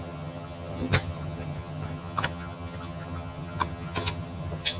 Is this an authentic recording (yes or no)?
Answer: no